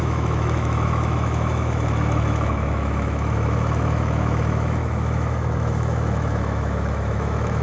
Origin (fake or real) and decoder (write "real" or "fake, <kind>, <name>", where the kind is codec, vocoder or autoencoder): fake, autoencoder, DAC-VAE